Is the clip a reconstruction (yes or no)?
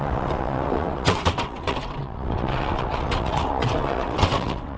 yes